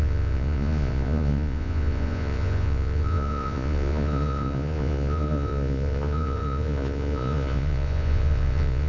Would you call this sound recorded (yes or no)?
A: no